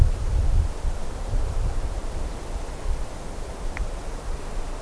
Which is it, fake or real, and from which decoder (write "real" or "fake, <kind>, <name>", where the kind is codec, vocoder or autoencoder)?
real